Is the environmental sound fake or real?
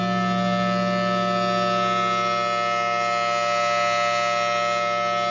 real